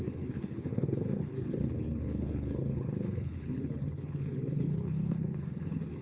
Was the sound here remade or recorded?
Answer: remade